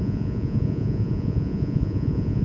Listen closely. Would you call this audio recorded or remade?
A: remade